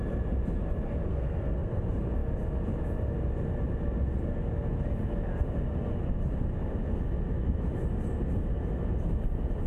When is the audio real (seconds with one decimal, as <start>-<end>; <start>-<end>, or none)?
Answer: 0.0-1.1; 1.8-9.7